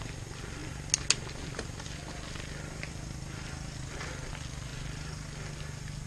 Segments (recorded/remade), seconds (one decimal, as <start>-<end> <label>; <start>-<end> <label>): 0.0-6.1 recorded